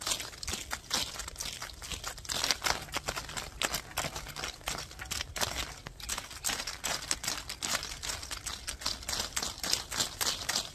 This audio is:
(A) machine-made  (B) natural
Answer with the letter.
B